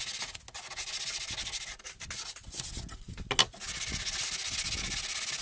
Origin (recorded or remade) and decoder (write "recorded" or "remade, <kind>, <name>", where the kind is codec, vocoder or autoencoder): recorded